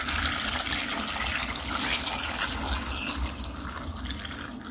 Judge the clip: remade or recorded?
recorded